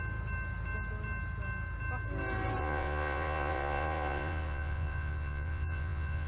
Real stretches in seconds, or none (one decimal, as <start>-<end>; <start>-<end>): 0.0-2.6